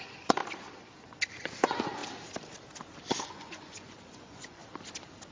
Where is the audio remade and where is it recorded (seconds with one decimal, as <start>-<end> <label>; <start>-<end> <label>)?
0.0-0.4 remade; 0.4-1.3 recorded; 1.3-2.0 remade; 2.0-3.2 recorded; 3.2-4.6 remade; 4.6-5.3 recorded